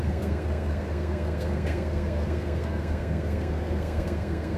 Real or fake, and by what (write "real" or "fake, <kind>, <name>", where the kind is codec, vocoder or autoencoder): fake, codec, SNAC